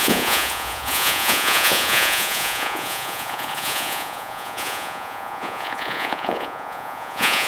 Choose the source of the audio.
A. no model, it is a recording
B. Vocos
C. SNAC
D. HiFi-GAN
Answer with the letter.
B